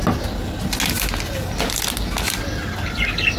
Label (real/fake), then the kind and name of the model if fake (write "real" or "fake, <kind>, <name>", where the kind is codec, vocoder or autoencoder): real